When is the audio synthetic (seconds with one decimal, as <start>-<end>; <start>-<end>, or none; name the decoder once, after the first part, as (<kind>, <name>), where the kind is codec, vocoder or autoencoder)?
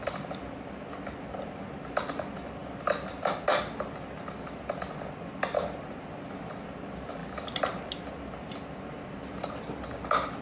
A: none